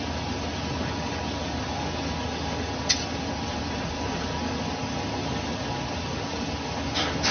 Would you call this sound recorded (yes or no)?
yes